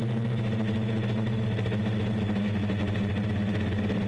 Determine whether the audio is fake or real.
real